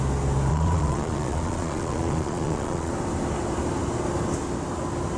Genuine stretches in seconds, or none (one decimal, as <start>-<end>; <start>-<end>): 0.0-0.5; 2.9-5.2